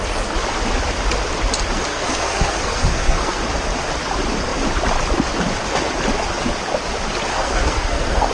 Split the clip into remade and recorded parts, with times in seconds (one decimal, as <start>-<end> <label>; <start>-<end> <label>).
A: 0.0-1.9 recorded; 1.9-3.4 remade; 3.4-7.3 recorded; 7.3-8.3 remade